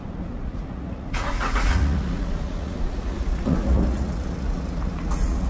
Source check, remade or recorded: remade